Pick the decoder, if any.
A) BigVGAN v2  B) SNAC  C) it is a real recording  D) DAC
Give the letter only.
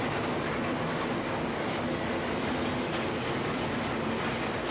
C